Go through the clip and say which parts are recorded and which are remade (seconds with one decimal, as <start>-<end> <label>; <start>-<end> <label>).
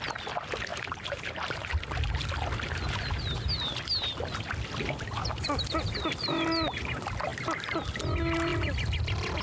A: 0.0-0.7 recorded; 0.7-1.7 remade; 1.7-9.4 recorded